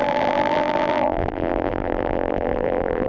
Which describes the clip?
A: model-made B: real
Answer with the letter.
A